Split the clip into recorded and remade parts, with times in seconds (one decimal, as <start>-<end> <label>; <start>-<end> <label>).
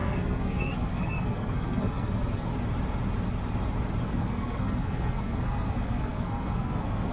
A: 0.0-2.5 remade; 2.5-4.0 recorded; 4.0-7.1 remade